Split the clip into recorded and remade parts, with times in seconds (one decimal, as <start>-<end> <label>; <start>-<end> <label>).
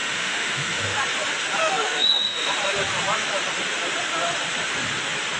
0.0-1.0 remade; 1.0-1.6 recorded; 1.6-2.5 remade; 2.5-5.4 recorded